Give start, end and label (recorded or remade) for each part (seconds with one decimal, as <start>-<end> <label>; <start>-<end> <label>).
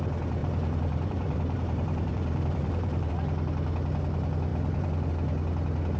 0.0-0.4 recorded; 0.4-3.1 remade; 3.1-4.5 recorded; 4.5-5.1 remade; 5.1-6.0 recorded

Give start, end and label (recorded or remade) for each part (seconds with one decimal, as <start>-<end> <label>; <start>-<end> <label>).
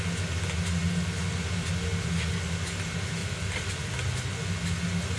0.0-3.2 recorded; 3.2-3.9 remade; 3.9-5.2 recorded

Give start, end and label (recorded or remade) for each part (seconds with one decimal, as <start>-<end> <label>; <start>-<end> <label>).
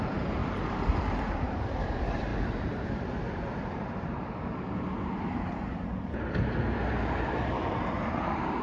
0.0-8.6 remade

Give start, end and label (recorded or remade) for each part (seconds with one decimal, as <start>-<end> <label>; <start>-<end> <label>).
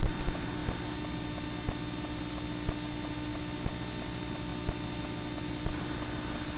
0.0-0.6 remade; 0.6-3.3 recorded; 3.3-4.5 remade; 4.5-5.4 recorded; 5.4-6.6 remade